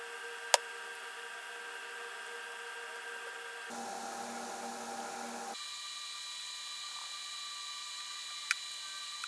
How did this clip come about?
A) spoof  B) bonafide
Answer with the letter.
B